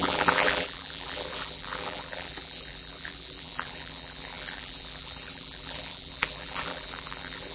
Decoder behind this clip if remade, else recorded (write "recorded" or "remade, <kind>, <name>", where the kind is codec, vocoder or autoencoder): remade, vocoder, BigVGAN v2